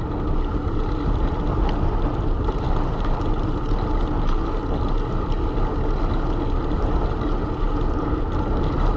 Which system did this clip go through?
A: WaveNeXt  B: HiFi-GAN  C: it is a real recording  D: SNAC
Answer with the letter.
C